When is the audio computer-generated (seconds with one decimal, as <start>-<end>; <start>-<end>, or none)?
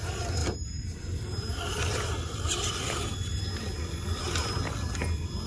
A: 0.4-3.4